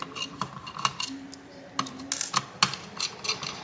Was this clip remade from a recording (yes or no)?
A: no